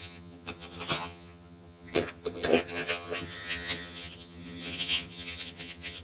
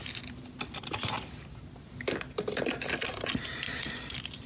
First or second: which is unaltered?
second